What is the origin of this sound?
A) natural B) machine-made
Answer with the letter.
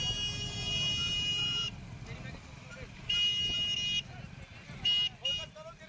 A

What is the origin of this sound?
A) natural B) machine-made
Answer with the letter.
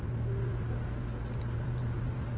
A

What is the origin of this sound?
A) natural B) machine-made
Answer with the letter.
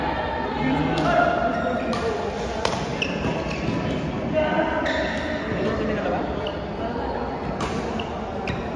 A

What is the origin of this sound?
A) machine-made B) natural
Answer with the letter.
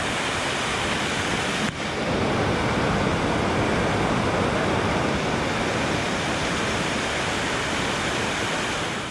B